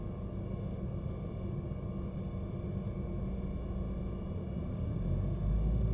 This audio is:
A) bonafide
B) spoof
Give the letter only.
A